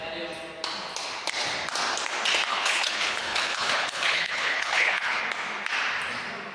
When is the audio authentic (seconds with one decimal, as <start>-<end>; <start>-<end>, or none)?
0.0-2.5; 5.2-6.5